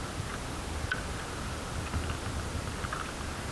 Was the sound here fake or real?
real